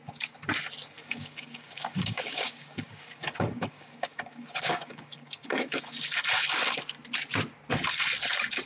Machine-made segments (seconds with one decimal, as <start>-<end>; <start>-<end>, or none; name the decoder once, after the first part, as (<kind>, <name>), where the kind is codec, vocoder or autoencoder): 1.0-5.8 (codec, DAC)